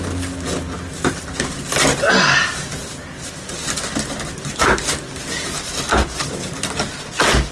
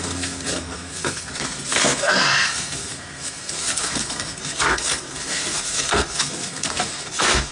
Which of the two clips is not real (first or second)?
second